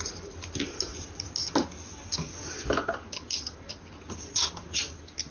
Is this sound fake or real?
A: real